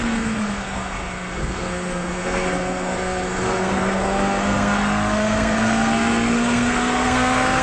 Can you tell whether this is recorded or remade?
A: remade